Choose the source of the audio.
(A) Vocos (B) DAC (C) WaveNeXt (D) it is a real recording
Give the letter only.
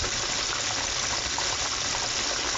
D